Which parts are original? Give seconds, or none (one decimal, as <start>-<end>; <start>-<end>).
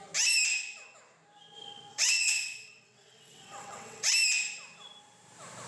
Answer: 0.0-1.9; 4.1-5.7